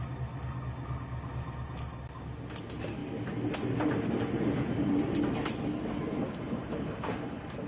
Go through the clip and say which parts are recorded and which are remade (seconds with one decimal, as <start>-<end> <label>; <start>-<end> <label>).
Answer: 0.0-7.7 recorded